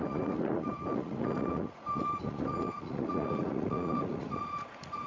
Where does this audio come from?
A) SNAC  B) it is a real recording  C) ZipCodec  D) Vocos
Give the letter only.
D